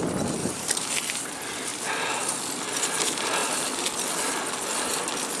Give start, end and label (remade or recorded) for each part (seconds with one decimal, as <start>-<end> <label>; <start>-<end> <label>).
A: 0.0-0.4 recorded; 0.4-0.9 remade; 0.9-5.4 recorded